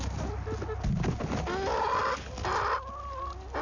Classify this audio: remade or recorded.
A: recorded